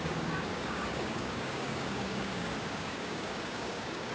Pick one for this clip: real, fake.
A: fake